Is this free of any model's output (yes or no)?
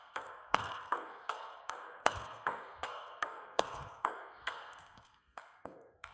no